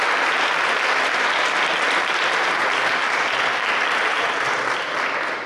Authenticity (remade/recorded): recorded